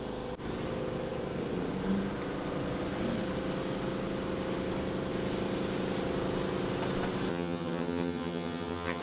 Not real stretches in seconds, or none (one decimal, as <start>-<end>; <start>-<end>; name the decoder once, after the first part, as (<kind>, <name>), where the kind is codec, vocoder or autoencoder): 7.3-9.0 (vocoder, HiFi-GAN)